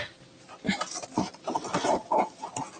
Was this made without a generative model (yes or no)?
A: yes